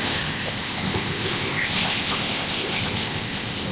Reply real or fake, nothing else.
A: fake